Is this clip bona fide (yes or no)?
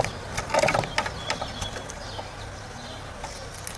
yes